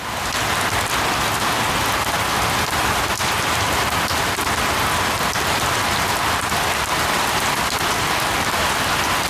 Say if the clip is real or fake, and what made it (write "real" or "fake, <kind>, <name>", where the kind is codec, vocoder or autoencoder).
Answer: real